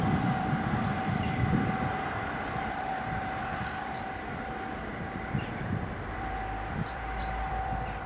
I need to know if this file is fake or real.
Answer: fake